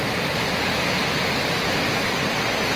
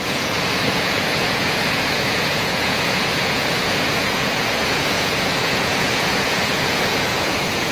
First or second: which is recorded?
first